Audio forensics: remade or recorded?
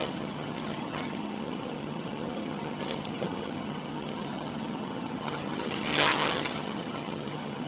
remade